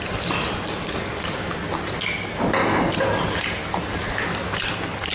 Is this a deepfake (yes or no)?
no